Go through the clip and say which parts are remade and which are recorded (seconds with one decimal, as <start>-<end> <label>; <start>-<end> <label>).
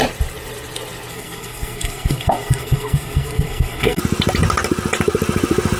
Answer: 0.0-1.1 recorded; 1.1-4.0 remade; 4.0-5.8 recorded